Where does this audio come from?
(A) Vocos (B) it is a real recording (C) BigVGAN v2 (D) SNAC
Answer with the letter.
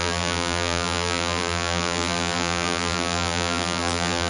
C